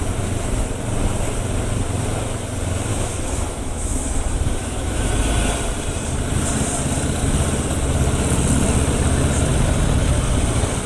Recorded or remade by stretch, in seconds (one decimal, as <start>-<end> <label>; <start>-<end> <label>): 0.0-2.9 recorded; 2.9-5.1 remade; 5.1-10.9 recorded